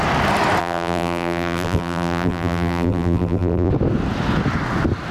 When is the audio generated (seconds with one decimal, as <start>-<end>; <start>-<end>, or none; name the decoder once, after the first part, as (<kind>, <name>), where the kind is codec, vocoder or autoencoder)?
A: 0.6-3.7 (vocoder, BigVGAN v2)